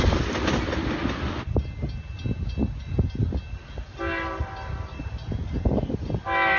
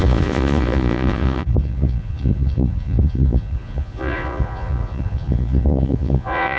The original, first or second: first